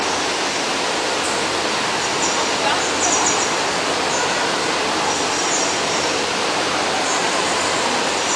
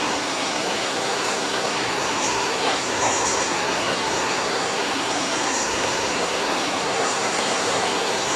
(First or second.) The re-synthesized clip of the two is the second